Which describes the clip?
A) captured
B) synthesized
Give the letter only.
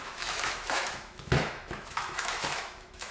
B